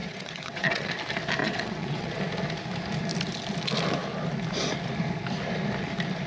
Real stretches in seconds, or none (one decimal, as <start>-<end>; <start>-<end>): 0.9-1.4; 2.2-6.3